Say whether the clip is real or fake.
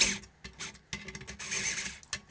real